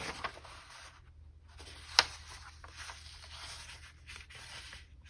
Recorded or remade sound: recorded